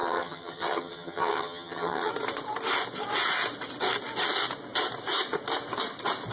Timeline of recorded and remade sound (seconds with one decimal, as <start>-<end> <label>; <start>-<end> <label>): 0.0-2.1 remade; 2.1-6.3 recorded